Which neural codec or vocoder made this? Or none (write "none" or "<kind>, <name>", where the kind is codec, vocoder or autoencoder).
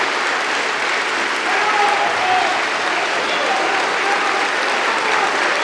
none